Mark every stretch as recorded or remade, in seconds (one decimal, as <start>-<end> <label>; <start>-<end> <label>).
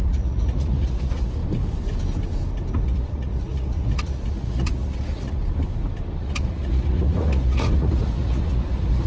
0.0-1.4 remade; 1.4-2.7 recorded; 2.7-5.4 remade; 5.4-6.2 recorded; 6.2-9.1 remade